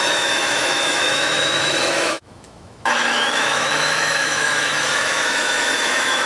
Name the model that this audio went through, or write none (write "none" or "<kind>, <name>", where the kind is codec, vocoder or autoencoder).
autoencoder, DAC-VAE